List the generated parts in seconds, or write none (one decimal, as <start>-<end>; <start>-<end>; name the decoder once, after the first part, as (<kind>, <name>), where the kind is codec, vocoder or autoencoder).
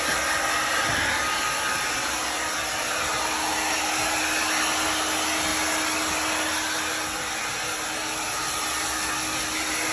none